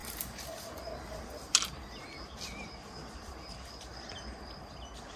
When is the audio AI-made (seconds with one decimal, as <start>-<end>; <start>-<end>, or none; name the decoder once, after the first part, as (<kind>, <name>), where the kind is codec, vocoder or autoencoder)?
none